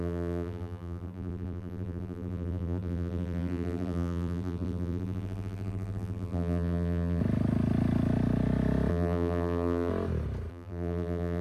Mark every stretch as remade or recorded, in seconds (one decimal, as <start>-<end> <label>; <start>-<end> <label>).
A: 0.0-7.2 remade; 7.2-8.9 recorded; 8.9-9.9 remade; 9.9-10.5 recorded; 10.5-11.4 remade